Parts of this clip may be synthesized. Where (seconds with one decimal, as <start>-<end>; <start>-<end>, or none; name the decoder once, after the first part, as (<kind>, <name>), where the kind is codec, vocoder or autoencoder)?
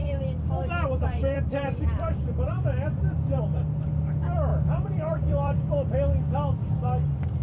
0.0-3.4 (vocoder, BigVGAN v2); 4.5-5.9